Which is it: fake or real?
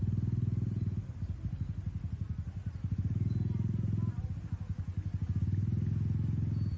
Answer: real